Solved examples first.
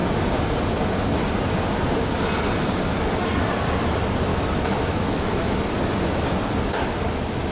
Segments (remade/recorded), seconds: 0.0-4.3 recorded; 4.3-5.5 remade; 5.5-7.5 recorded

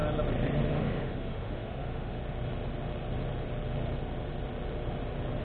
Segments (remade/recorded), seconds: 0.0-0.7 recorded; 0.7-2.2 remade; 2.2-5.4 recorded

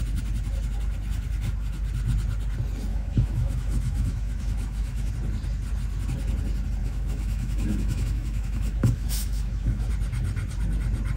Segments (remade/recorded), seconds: 0.0-2.9 recorded; 2.9-5.1 remade; 5.1-6.8 recorded; 6.8-9.9 remade; 9.9-11.2 recorded

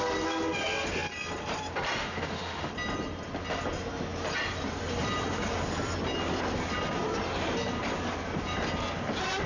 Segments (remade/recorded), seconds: 0.0-2.0 recorded; 2.0-2.7 remade; 2.7-9.5 recorded

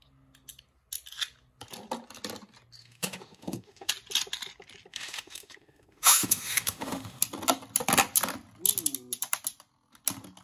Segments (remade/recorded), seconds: 0.0-2.8 recorded; 2.8-3.9 remade; 3.9-4.9 recorded; 4.9-7.2 remade; 7.2-10.4 recorded

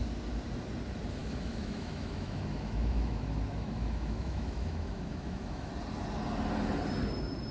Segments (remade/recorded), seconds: 0.0-1.2 recorded; 1.2-5.7 remade; 5.7-7.5 recorded

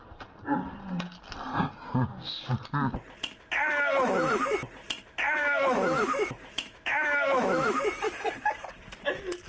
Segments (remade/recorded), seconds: 0.0-5.4 recorded; 5.4-7.8 remade; 7.8-9.5 recorded